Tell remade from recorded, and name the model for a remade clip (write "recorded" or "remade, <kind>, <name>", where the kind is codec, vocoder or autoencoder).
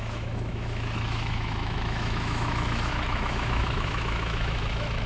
remade, autoencoder, DAC-VAE